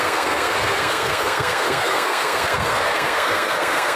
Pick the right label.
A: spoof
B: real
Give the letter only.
A